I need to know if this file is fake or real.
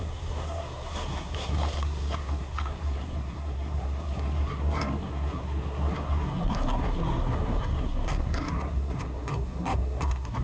fake